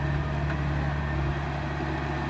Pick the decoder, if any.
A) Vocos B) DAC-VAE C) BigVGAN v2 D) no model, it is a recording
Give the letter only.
D